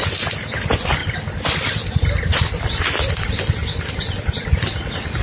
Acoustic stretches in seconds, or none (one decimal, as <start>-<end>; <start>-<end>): 0.0-5.2